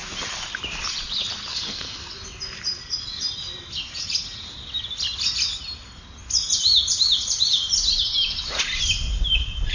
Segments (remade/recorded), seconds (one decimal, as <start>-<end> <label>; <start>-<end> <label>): 0.0-1.5 recorded; 1.5-2.1 remade; 2.1-9.7 recorded